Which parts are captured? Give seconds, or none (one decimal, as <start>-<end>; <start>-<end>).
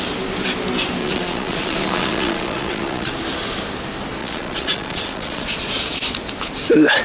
0.0-1.0; 3.1-4.2; 5.7-7.0